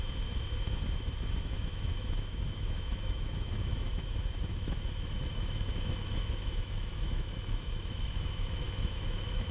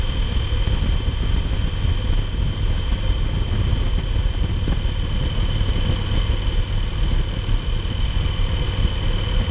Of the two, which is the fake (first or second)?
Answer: first